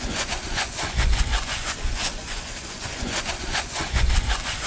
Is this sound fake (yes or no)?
yes